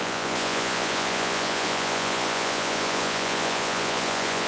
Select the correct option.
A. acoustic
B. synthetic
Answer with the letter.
B